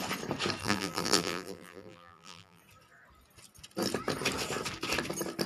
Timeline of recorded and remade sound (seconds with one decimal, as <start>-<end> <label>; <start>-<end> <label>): 0.0-0.6 recorded; 0.6-2.6 remade; 2.6-5.5 recorded